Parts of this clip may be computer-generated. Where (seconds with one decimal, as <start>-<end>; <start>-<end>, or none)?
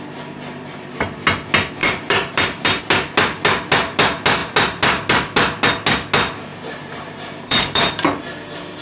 1.8-2.8; 6.5-7.9